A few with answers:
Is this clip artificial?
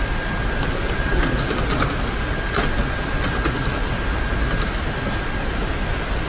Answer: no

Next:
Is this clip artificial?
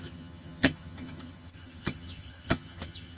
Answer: yes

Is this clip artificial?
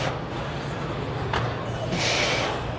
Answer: no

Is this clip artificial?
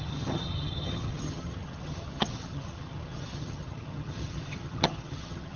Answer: yes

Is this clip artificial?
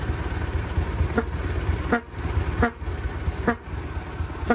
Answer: no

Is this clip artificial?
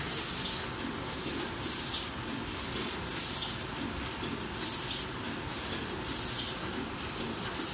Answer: no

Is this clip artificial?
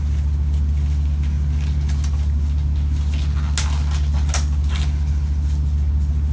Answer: no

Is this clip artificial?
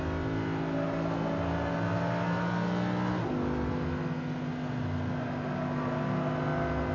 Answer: no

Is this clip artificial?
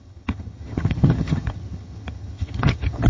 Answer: yes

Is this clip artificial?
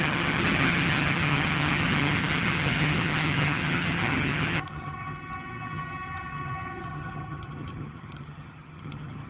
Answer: yes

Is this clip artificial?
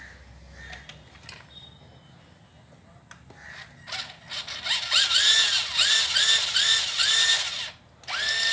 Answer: no